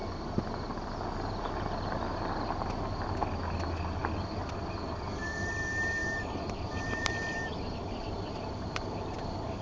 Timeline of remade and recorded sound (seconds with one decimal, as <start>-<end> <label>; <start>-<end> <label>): 0.0-6.0 recorded; 6.0-9.6 remade

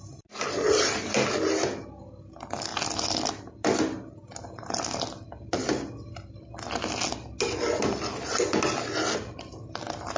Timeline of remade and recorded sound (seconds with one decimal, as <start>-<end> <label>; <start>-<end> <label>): 0.0-10.2 recorded

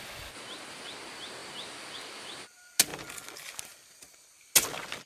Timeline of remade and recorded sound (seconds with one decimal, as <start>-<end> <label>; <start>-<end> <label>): 0.0-5.1 recorded

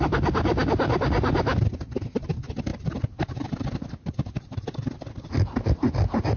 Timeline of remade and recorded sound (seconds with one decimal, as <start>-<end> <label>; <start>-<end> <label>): 0.0-2.7 recorded; 2.7-5.0 remade; 5.0-6.4 recorded